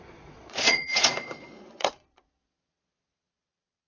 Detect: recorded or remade remade